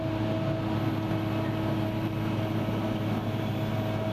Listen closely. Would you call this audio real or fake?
real